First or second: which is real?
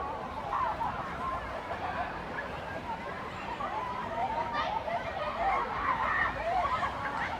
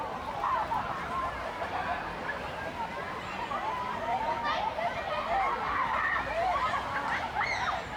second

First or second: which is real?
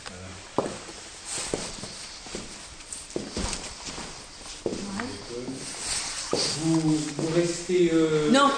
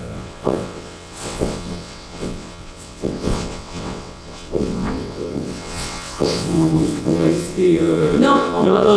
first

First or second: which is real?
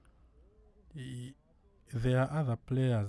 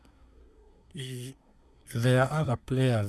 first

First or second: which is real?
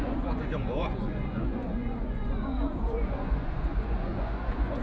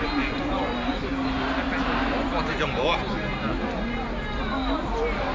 second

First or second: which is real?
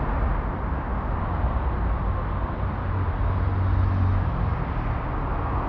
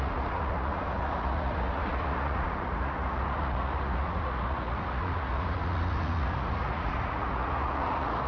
first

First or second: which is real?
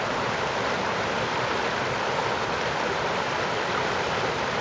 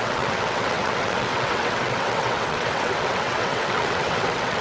first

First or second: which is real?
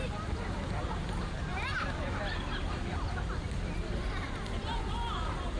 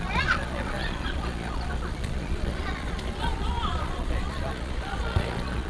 first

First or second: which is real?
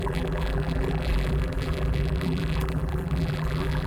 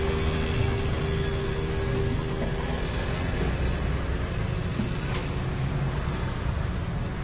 second